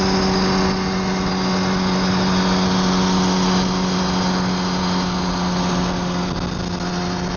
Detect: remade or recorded recorded